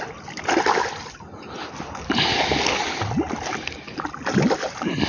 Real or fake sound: real